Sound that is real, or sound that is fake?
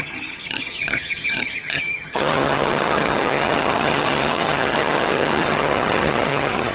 fake